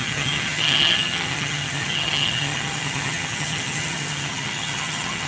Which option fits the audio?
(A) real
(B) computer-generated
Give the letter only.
B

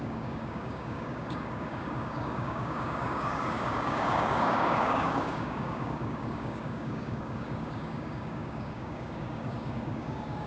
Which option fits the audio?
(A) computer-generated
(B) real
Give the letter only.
A